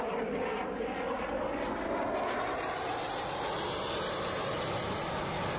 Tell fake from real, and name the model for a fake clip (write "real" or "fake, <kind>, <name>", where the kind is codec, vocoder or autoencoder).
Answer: real